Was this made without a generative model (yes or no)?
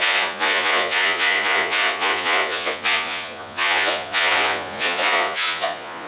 no